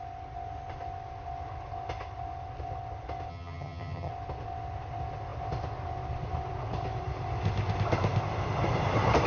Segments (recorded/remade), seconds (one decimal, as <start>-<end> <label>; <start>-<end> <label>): 0.0-3.3 recorded; 3.3-4.1 remade; 4.1-9.3 recorded